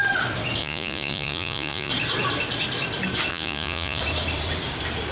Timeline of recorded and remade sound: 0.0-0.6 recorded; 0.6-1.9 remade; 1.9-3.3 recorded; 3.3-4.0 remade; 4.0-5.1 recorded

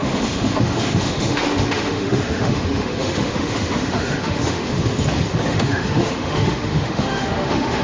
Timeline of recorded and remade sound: 0.0-4.7 remade; 4.7-5.5 recorded; 5.5-7.8 remade

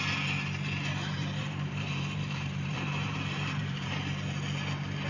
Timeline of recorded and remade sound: 0.0-0.9 recorded; 0.9-4.0 remade; 4.0-5.1 recorded

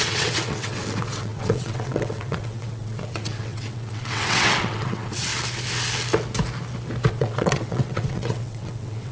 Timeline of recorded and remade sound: 0.0-5.3 remade; 5.3-7.1 recorded; 7.1-9.1 remade